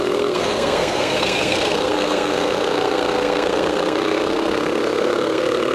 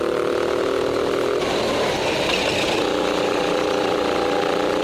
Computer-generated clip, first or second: first